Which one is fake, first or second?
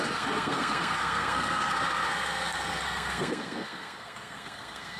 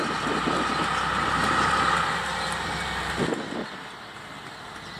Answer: first